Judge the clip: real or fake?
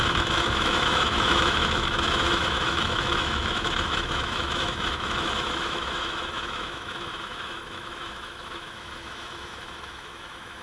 fake